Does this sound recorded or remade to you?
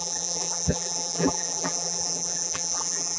remade